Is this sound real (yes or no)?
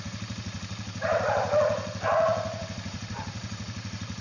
no